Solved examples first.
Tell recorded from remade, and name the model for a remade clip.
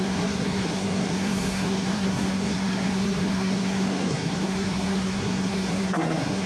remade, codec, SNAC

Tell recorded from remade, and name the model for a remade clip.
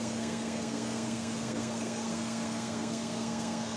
remade, codec, SNAC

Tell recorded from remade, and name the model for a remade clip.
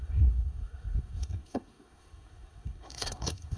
remade, codec, SNAC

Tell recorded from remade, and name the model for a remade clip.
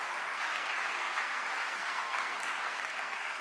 remade, codec, SNAC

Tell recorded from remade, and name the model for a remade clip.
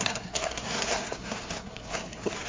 remade, codec, SNAC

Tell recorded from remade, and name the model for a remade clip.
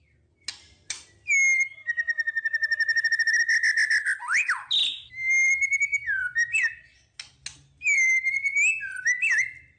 recorded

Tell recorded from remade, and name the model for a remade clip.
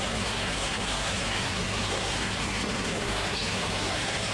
remade, codec, SNAC